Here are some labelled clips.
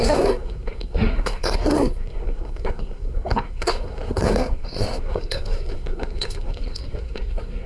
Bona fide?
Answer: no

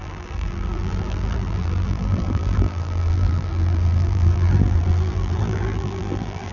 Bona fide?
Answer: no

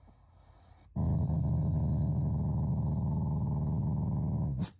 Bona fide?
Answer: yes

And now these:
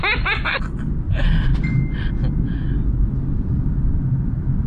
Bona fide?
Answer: yes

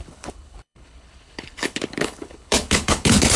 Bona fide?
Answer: no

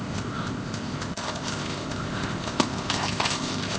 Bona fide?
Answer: no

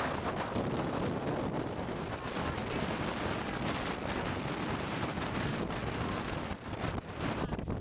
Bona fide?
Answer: no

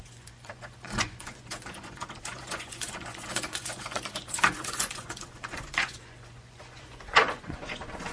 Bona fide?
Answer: no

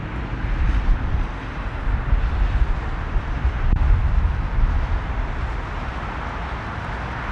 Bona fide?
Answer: yes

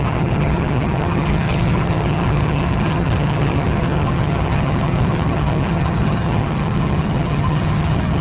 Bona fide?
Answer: no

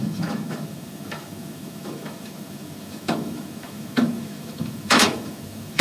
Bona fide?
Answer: no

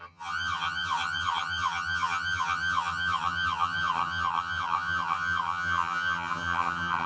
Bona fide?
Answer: no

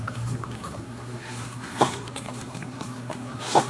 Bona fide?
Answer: no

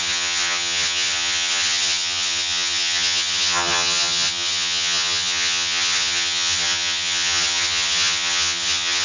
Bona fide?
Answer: no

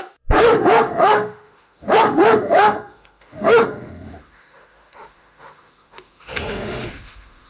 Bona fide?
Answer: no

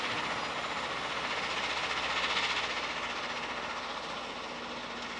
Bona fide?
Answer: yes